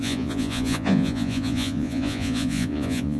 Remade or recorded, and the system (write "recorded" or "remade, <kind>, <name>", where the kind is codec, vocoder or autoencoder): remade, vocoder, Vocos